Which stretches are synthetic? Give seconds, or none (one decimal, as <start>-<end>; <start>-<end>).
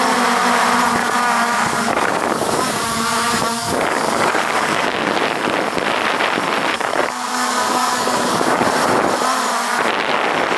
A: 1.0-5.1; 6.7-8.6